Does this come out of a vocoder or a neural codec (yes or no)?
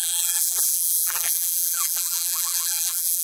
yes